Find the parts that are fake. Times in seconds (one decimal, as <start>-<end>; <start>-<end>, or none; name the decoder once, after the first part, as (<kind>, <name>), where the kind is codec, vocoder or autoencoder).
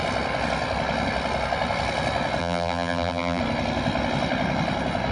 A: 2.4-3.4 (vocoder, BigVGAN v2)